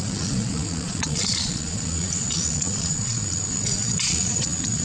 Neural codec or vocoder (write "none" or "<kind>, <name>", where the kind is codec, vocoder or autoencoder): vocoder, Vocos